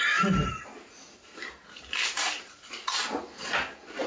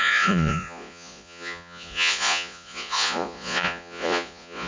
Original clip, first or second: first